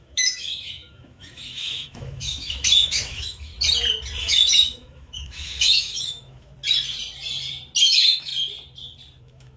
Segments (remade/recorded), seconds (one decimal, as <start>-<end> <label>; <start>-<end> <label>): 0.0-3.5 remade; 3.5-4.2 recorded; 4.2-6.5 remade; 6.5-7.9 recorded; 7.9-8.3 remade; 8.3-9.2 recorded; 9.2-9.6 remade